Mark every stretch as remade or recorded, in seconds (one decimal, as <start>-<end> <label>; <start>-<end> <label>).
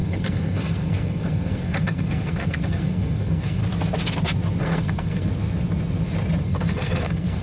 0.0-3.6 remade; 3.6-4.6 recorded; 4.6-5.3 remade; 5.3-6.4 recorded; 6.4-7.4 remade